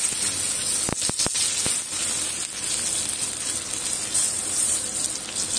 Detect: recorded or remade recorded